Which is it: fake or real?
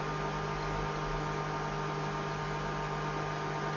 real